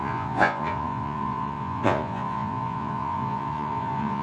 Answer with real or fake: fake